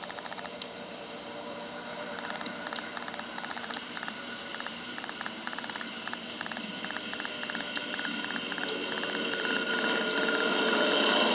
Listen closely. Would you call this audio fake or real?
fake